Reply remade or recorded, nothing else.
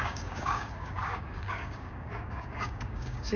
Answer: remade